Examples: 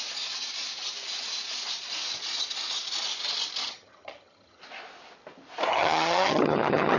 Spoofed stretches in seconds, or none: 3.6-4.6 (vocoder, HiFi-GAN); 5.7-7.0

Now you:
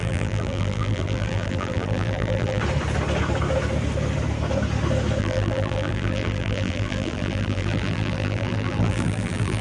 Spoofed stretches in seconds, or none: 0.0-2.6 (vocoder, BigVGAN v2); 5.2-9.6

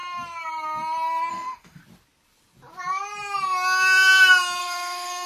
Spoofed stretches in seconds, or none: 1.3-1.8 (autoencoder, DAC-VAE); 4.6-5.3

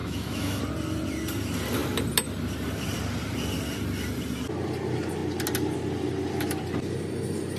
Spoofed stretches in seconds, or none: 0.0-0.6 (autoencoder, DAC-VAE)

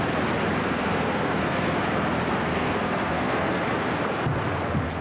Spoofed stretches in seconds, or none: 0.6-1.8 (codec, SNAC); 2.3-3.6

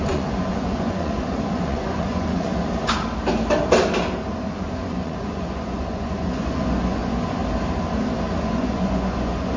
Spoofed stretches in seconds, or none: 0.0-2.5 (vocoder, Vocos); 4.5-7.4; 8.4-9.6